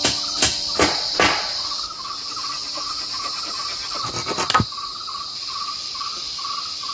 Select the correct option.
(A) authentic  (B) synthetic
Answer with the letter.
A